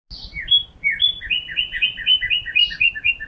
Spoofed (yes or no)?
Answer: no